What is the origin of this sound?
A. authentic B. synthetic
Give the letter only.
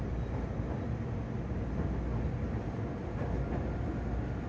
A